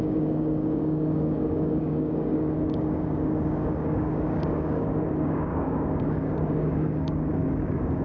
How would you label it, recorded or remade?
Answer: remade